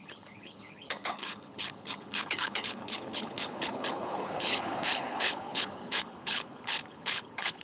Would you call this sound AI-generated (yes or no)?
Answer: yes